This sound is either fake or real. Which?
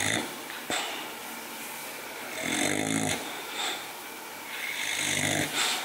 real